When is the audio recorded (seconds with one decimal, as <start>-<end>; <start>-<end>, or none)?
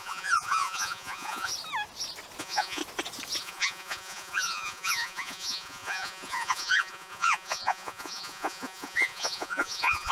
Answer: 1.5-2.4; 2.8-3.4